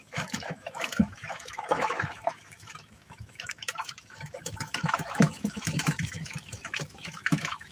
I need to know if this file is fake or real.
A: fake